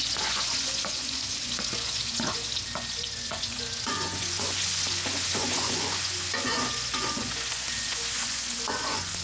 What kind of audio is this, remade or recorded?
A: remade